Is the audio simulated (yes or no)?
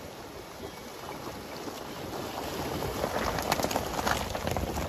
no